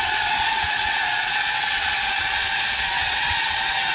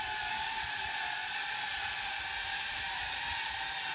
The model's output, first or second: first